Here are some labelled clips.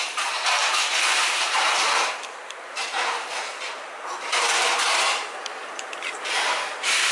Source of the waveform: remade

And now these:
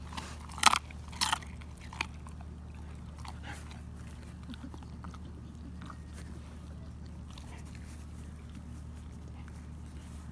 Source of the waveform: recorded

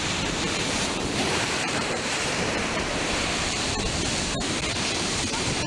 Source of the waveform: remade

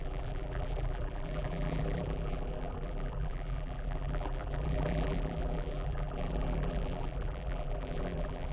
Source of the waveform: remade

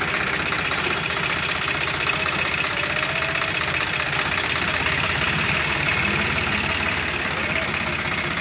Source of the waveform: remade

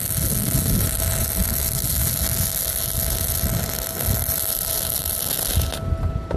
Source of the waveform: recorded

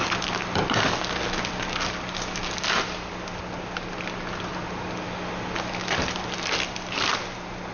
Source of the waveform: recorded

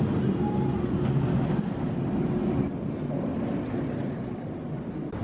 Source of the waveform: recorded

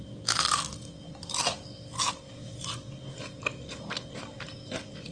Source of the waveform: recorded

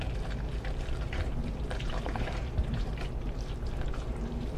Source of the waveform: remade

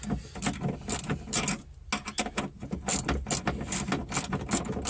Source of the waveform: recorded